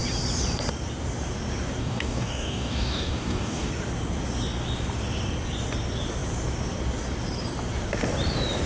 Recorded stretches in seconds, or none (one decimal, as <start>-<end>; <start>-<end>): 0.0-1.8; 3.7-8.7

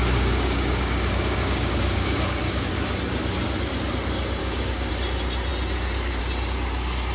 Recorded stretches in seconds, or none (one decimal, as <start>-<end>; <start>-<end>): 2.7-4.4; 4.9-7.1